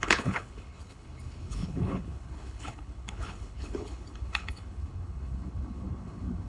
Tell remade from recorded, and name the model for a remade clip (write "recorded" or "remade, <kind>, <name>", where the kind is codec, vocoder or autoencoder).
remade, codec, HILCodec